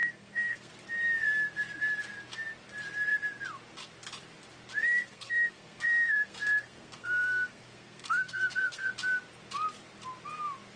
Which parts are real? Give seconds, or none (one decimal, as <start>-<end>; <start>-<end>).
0.7-4.8; 8.9-10.8